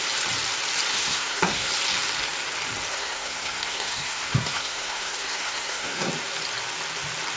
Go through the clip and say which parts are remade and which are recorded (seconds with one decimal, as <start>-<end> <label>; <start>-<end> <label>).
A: 0.0-0.9 recorded; 0.9-1.7 remade; 1.7-2.9 recorded; 2.9-6.1 remade; 6.1-7.4 recorded